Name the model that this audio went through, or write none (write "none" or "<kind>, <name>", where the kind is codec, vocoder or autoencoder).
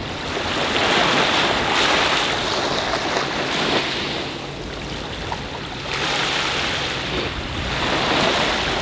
none